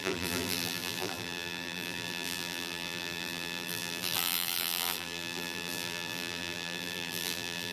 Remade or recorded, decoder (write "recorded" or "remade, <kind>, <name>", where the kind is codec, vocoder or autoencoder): remade, vocoder, BigVGAN v2